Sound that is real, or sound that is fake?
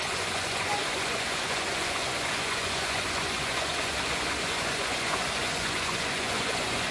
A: fake